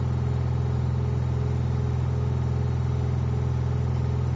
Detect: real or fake real